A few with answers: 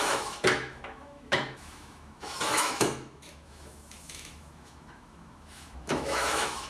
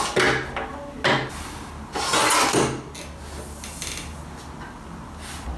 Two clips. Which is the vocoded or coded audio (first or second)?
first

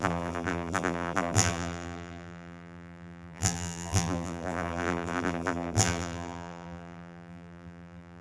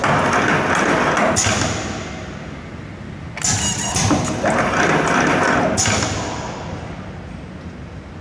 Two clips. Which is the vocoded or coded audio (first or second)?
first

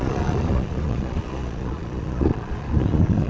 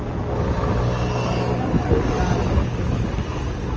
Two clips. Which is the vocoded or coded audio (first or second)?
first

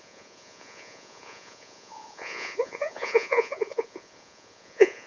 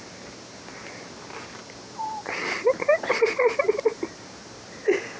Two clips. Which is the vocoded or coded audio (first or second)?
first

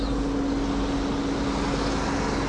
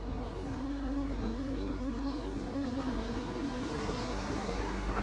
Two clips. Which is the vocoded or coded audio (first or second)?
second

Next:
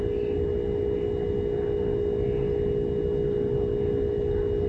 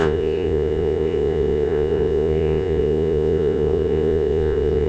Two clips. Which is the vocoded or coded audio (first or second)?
second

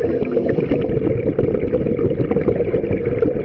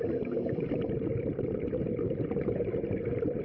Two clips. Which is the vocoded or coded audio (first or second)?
second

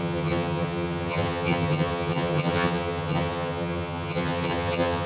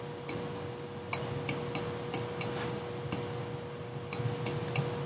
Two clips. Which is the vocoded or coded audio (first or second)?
first